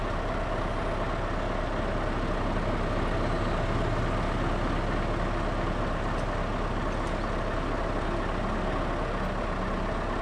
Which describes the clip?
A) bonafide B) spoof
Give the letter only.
A